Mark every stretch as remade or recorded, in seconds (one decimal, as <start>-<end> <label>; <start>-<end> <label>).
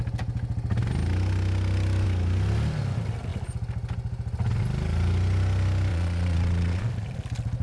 0.0-5.9 recorded; 5.9-6.9 remade; 6.9-7.6 recorded